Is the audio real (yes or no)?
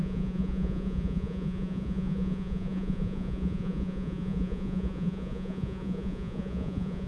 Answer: no